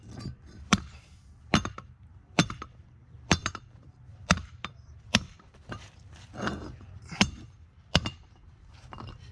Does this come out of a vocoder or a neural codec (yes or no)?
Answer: yes